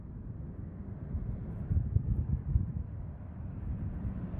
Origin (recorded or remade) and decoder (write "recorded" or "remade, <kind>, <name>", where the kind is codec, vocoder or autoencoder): recorded